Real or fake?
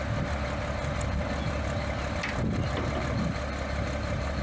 real